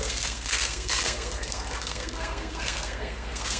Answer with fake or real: fake